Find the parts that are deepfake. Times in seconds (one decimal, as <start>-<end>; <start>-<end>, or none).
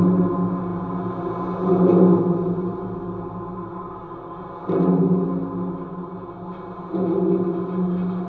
none